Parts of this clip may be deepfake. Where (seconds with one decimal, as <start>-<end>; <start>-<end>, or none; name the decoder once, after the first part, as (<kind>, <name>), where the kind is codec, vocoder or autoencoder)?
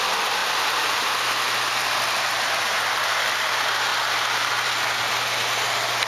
0.4-1.1 (vocoder, BigVGAN v2)